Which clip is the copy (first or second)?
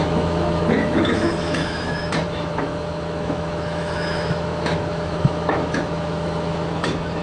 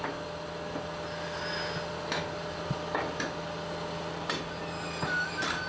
first